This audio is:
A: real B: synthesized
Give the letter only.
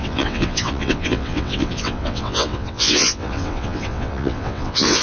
B